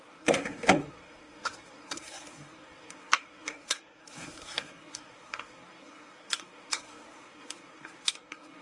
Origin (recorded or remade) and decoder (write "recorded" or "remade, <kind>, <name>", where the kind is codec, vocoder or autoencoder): remade, codec, SNAC